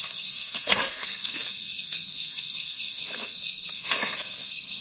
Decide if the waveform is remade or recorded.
remade